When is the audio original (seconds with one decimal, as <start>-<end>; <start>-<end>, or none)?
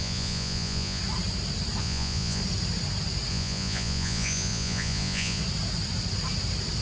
1.0-1.8; 2.4-3.3; 5.4-6.8